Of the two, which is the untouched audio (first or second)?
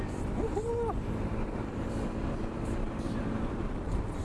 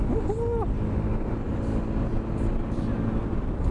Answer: second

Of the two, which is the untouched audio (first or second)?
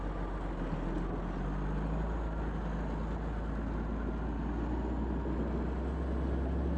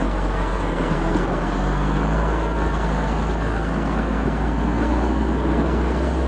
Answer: first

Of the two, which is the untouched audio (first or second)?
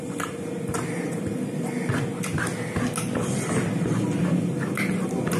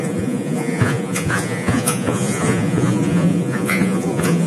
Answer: first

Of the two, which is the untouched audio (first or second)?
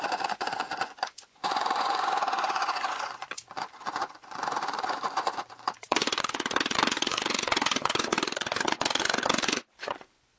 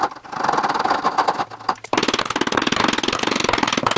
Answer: second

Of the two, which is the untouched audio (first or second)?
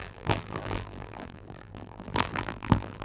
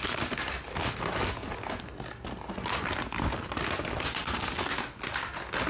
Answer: second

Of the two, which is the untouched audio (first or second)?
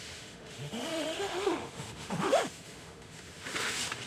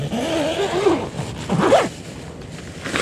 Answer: second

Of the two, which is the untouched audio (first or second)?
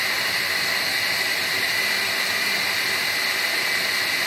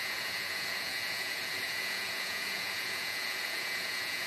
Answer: first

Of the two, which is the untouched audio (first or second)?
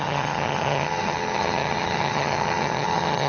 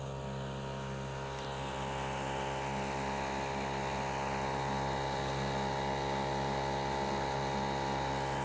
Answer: second